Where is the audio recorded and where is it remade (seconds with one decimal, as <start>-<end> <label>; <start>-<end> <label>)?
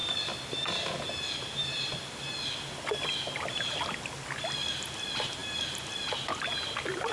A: 0.0-7.1 recorded